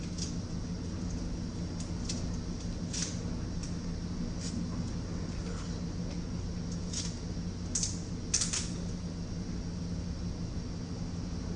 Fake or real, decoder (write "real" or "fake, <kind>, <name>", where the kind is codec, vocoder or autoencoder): real